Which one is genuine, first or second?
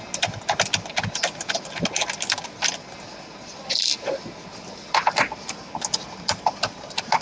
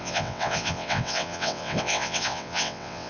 first